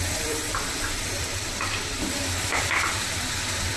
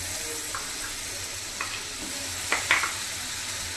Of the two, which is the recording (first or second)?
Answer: second